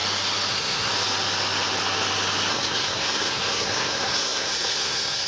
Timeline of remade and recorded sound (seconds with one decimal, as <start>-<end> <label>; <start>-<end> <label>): 0.0-0.5 recorded; 0.5-0.9 remade; 0.9-2.5 recorded; 2.5-5.3 remade